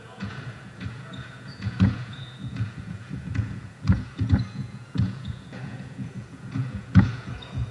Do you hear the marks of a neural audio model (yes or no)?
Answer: yes